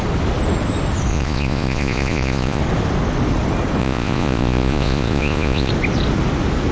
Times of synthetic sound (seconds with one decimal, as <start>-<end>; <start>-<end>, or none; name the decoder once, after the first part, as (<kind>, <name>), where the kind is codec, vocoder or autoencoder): 1.1-2.6 (vocoder, Vocos); 3.8-5.7